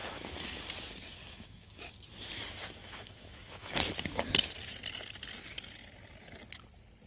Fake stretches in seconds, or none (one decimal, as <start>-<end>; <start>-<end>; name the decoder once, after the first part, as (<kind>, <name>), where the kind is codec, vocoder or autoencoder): 0.0-0.6 (autoencoder, DAC-VAE); 1.2-1.9; 2.8-4.3